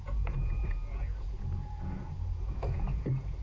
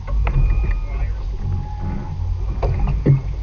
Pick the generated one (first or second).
first